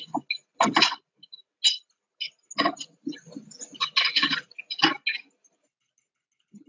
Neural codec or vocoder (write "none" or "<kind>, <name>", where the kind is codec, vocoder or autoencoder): none